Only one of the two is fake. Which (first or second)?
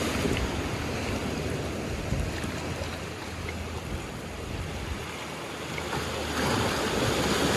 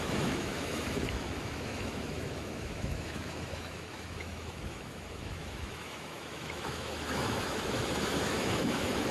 second